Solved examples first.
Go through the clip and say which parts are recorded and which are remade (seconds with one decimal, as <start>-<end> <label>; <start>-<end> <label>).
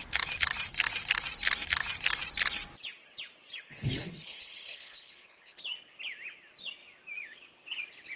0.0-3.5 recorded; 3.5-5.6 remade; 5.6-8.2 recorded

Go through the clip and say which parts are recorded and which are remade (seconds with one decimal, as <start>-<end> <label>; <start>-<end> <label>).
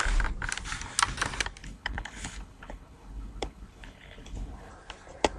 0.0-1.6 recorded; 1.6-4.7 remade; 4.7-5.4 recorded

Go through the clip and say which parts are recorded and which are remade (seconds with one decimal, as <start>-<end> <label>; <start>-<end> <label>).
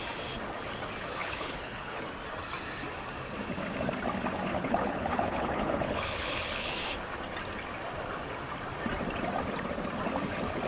0.0-1.2 recorded; 1.2-2.1 remade; 2.1-4.5 recorded; 4.5-6.7 remade; 6.7-10.7 recorded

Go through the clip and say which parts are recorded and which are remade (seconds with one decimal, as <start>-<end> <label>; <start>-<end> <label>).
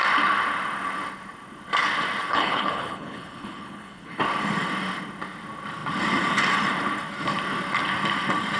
0.0-2.2 recorded; 2.2-4.2 remade; 4.2-8.6 recorded